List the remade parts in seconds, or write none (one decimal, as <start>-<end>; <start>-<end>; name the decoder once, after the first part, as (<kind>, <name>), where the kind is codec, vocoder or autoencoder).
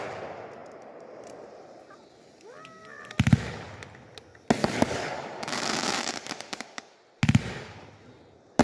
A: 4.6-6.9 (codec, DAC)